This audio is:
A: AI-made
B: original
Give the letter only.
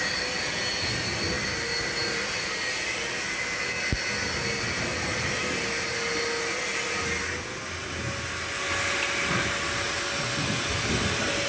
B